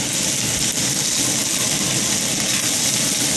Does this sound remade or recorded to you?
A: recorded